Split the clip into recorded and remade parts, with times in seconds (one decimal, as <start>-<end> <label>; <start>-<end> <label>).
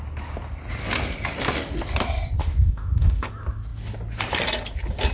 0.0-2.4 recorded; 2.4-3.3 remade; 3.3-5.1 recorded